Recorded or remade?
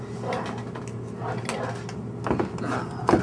recorded